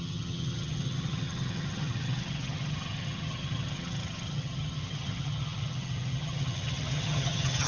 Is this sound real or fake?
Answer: fake